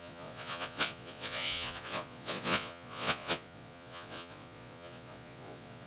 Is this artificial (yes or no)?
yes